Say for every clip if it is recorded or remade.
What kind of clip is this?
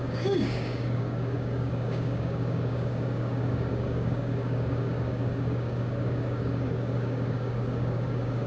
remade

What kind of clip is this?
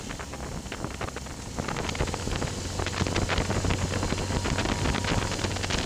recorded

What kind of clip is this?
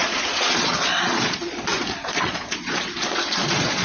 remade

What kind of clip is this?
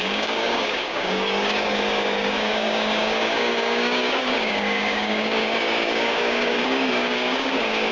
remade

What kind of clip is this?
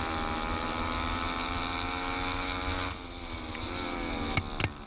recorded